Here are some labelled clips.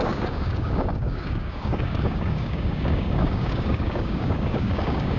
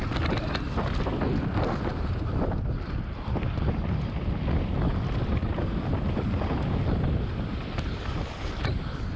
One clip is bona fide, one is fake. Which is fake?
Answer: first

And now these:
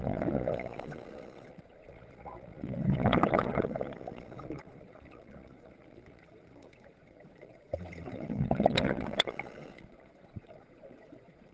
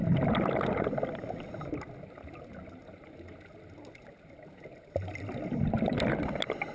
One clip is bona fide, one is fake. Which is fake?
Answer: first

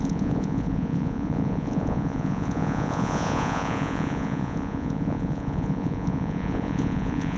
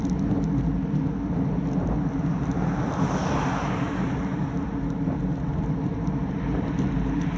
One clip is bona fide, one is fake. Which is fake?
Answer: first